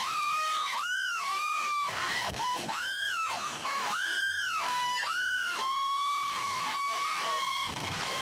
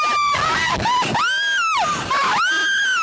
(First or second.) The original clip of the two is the second